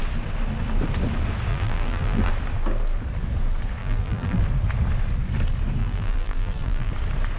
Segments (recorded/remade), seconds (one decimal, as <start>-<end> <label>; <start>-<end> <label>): 0.0-1.5 recorded; 1.5-2.3 remade; 2.3-3.8 recorded; 3.8-4.4 remade; 4.4-5.8 recorded; 5.8-6.9 remade; 6.9-7.4 recorded